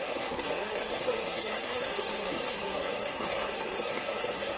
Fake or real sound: fake